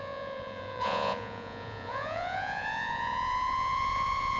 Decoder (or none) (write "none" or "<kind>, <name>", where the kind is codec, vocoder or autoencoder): vocoder, Vocos